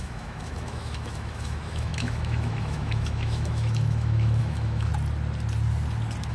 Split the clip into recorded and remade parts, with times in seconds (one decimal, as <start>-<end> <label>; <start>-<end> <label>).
0.0-4.9 remade; 4.9-6.3 recorded